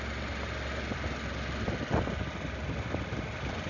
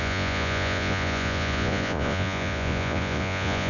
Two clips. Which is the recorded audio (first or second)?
first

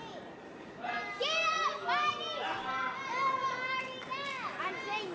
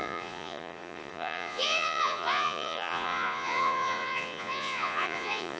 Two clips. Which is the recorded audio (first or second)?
first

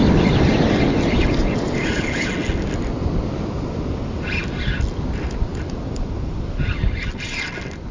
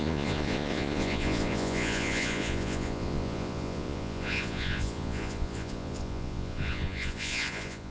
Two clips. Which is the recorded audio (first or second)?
first